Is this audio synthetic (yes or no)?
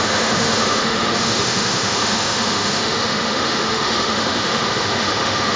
yes